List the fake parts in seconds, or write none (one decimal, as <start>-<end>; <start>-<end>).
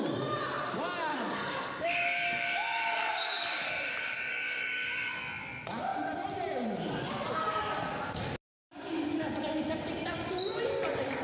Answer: 1.1-5.2